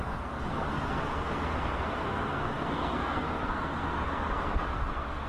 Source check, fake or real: fake